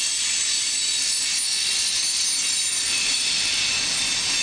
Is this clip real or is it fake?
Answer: real